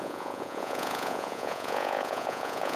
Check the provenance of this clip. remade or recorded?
remade